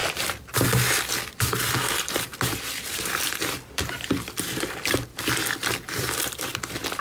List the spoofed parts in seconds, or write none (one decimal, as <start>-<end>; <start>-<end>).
2.3-6.5